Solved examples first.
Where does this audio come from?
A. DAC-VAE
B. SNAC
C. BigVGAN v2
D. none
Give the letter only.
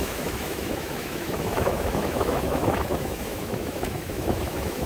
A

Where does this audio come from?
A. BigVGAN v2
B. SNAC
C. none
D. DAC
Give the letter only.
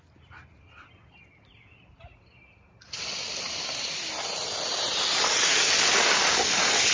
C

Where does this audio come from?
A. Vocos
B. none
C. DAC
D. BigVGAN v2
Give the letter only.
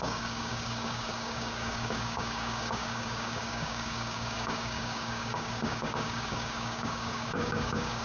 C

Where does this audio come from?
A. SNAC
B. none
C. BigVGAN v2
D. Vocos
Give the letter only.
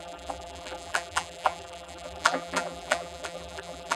C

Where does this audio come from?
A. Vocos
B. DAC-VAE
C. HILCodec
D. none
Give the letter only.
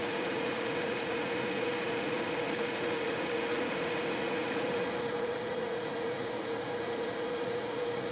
A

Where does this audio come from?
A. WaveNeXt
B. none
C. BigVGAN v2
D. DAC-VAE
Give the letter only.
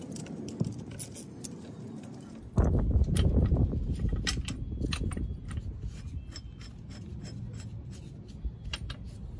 B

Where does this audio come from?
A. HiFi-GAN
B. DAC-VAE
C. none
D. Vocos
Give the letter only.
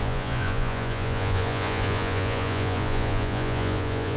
D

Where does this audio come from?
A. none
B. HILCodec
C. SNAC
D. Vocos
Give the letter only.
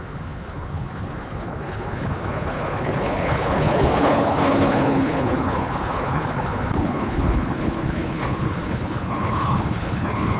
B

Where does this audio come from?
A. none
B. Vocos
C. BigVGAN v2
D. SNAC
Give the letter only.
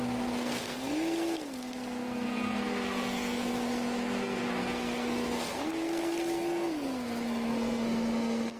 D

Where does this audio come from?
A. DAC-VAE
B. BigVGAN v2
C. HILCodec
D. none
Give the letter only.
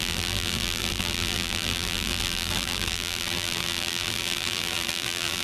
B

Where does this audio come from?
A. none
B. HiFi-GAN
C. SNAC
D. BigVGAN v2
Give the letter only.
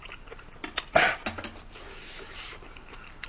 A